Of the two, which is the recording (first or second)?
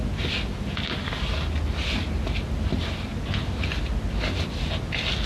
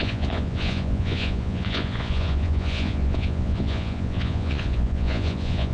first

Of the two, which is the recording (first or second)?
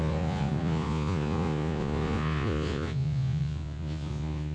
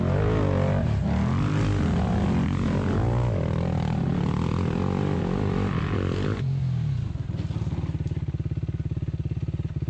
second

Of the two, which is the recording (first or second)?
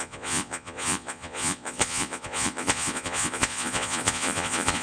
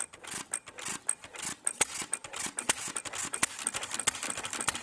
second